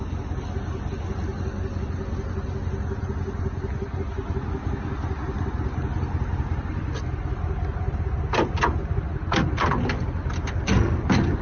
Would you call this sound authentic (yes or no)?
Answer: yes